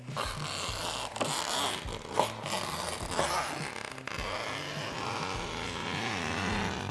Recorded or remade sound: recorded